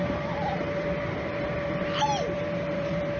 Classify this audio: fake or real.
fake